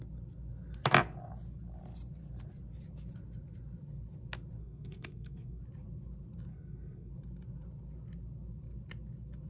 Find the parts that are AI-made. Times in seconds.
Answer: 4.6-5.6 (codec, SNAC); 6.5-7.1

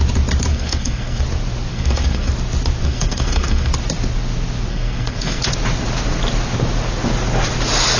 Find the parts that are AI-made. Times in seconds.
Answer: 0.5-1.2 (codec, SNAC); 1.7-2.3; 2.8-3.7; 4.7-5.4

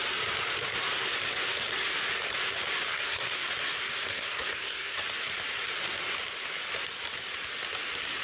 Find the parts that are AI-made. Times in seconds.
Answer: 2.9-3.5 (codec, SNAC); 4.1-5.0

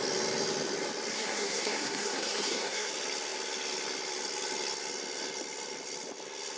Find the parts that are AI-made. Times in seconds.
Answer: 1.1-2.9 (codec, SNAC)